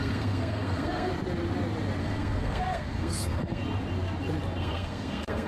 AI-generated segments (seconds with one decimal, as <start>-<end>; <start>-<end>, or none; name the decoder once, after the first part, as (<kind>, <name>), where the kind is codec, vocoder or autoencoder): 0.0-1.1 (codec, SNAC); 2.0-3.6; 4.6-5.5